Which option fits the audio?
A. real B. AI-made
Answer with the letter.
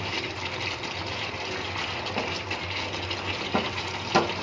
A